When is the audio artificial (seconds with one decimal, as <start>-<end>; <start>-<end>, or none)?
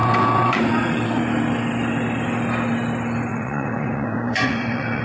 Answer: 0.0-1.2; 3.3-5.0